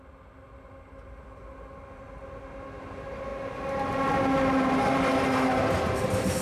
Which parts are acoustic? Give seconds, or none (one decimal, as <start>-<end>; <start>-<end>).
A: 0.0-6.4